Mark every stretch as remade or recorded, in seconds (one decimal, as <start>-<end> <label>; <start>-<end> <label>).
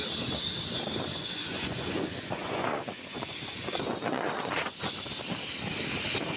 0.0-1.1 recorded; 1.1-4.9 remade; 4.9-6.4 recorded